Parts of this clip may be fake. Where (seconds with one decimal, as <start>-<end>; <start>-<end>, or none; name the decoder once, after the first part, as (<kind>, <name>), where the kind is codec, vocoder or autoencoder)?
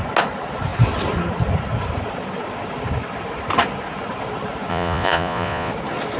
4.7-5.7 (vocoder, Vocos)